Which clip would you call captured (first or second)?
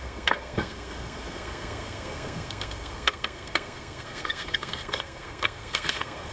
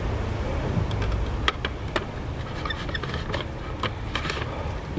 second